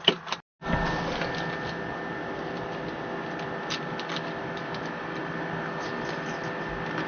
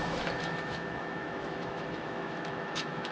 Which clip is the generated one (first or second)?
second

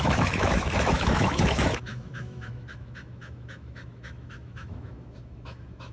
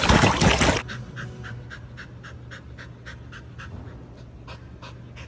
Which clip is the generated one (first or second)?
first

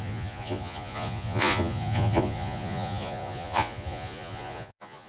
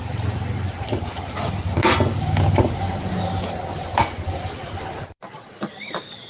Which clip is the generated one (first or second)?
first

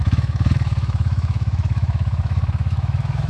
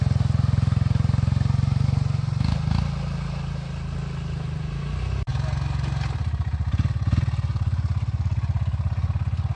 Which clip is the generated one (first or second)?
first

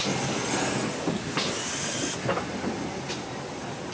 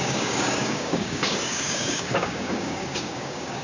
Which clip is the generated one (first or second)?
second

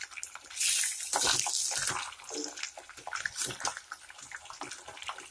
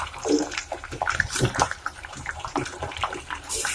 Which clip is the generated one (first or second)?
second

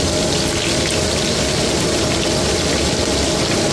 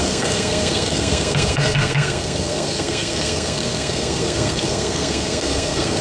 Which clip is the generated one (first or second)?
second